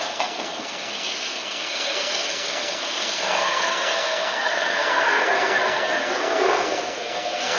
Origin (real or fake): fake